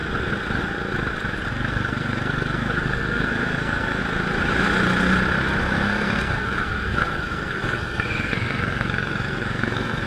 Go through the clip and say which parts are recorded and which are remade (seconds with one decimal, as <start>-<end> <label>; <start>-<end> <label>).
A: 0.0-1.5 recorded; 1.5-4.0 remade; 4.0-5.6 recorded; 5.6-10.1 remade